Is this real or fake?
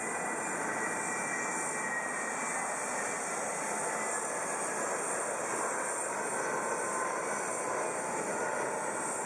real